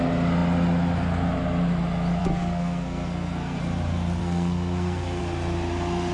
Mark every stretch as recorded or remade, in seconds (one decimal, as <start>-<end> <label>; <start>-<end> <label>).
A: 0.0-2.2 recorded; 2.2-3.6 remade; 3.6-4.2 recorded; 4.2-5.2 remade; 5.2-6.1 recorded